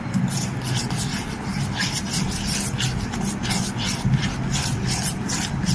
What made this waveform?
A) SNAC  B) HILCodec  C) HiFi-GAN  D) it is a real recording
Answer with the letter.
D